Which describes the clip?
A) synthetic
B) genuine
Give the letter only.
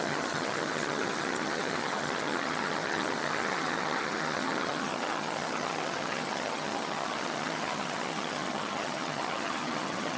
A